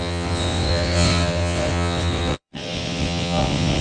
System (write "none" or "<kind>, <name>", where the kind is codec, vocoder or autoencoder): vocoder, WaveNeXt